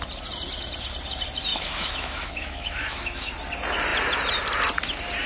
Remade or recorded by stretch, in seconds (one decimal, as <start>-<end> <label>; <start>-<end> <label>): 0.0-1.5 recorded; 1.5-3.3 remade; 3.3-5.3 recorded